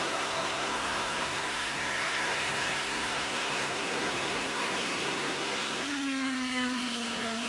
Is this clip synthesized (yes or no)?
yes